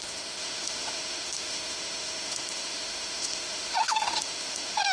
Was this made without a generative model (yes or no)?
no